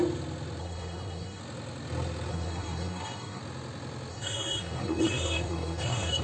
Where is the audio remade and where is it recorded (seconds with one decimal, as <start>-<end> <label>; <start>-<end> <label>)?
0.0-0.6 recorded; 0.6-1.4 remade; 1.4-2.3 recorded; 2.3-3.4 remade; 3.4-4.1 recorded; 4.1-6.2 remade